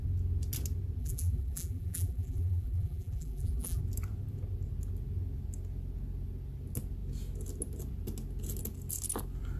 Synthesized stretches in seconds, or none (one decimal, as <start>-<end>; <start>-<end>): 1.0-3.8